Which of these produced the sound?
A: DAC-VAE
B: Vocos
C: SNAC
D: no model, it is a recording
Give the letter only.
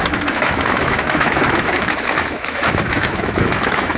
A